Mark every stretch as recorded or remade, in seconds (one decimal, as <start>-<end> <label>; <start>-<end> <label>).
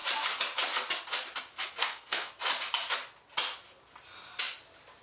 0.0-1.8 recorded; 1.8-2.3 remade; 2.3-5.0 recorded